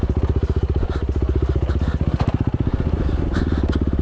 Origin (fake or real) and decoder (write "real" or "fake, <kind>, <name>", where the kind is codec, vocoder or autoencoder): real